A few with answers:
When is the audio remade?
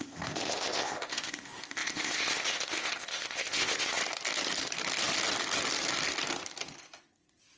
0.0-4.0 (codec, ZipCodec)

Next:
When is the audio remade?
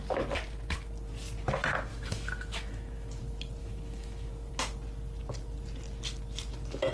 1.9-3.2 (autoencoder, DAC-VAE); 3.6-4.5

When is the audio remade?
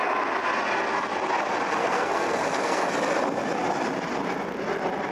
1.8-2.9 (codec, SNAC)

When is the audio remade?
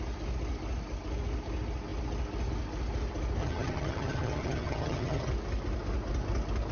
3.4-5.3 (vocoder, HiFi-GAN)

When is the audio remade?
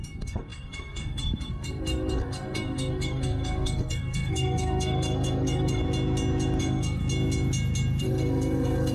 0.0-5.8 (codec, SNAC); 6.6-7.0; 8.0-8.9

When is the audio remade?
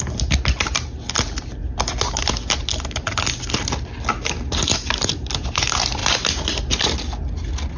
none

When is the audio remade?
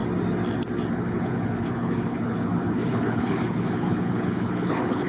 0.9-5.1 (codec, HILCodec)